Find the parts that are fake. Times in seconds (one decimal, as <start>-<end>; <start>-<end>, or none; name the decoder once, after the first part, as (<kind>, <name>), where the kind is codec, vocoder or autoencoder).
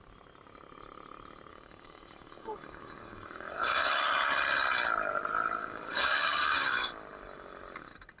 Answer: 1.5-3.9 (codec, DAC); 5.6-6.9